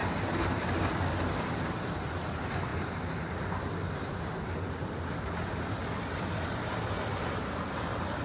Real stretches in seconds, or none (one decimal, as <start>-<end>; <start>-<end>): 0.0-8.2